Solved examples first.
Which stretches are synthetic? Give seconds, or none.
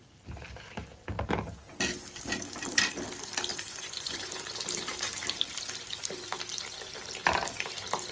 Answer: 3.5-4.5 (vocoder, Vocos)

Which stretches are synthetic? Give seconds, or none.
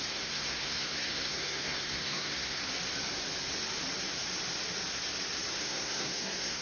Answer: 0.0-2.6 (codec, SNAC); 5.6-6.6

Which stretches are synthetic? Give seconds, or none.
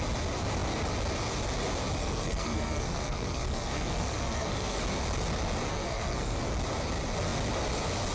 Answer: 2.0-4.8 (codec, SNAC); 5.7-6.4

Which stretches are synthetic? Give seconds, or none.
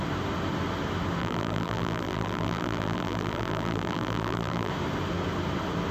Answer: 1.2-4.7 (vocoder, BigVGAN v2)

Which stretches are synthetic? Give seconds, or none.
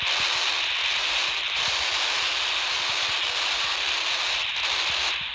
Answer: none